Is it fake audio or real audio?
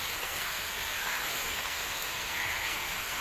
fake